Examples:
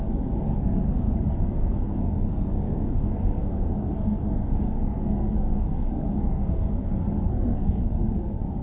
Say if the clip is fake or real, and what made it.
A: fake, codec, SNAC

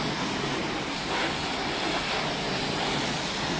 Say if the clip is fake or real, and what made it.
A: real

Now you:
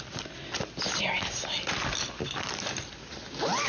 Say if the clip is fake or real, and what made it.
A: real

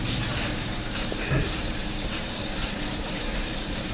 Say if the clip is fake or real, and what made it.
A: fake, vocoder, BigVGAN v2